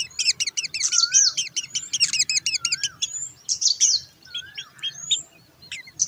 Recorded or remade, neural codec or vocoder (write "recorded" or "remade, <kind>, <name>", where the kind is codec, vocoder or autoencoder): recorded